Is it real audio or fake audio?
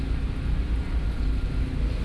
real